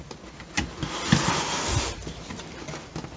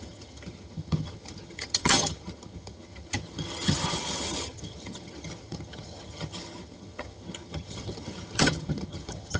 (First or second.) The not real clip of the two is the second